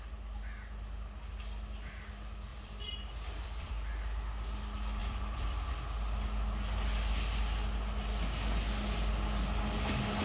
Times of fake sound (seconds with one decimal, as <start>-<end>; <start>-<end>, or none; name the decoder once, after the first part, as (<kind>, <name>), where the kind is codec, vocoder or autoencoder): 2.5-3.7 (vocoder, BigVGAN v2); 5.0-5.7